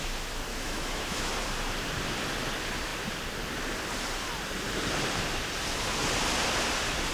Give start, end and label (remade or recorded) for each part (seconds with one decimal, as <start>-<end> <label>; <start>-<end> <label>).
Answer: 0.0-0.5 recorded; 0.5-1.3 remade; 1.3-7.1 recorded